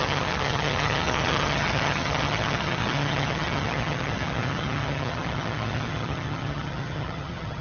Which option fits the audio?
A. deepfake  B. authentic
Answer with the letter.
A